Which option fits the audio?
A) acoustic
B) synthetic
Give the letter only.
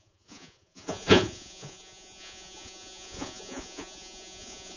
B